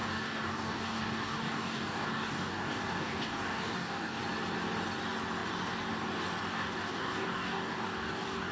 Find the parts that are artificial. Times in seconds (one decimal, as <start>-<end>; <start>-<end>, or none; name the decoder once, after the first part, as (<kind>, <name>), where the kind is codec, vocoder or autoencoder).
0.0-4.2 (codec, DAC); 6.5-8.5